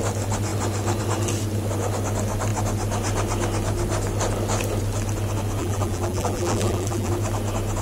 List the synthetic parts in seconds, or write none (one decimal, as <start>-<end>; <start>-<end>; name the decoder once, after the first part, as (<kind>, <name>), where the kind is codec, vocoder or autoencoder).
5.6-7.1 (vocoder, BigVGAN v2)

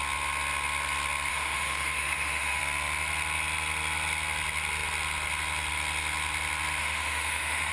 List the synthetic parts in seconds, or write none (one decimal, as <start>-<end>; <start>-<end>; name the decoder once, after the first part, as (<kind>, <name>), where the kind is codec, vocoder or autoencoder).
1.3-2.6 (autoencoder, DAC-VAE); 6.8-7.7

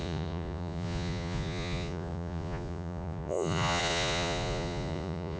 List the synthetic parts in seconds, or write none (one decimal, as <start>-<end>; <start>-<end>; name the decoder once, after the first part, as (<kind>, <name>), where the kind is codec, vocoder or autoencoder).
0.0-5.4 (vocoder, Vocos)

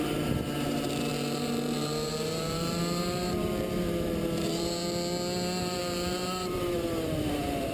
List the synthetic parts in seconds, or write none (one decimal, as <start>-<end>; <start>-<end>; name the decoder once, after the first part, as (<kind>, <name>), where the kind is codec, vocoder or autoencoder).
0.0-4.8 (vocoder, BigVGAN v2); 5.6-7.7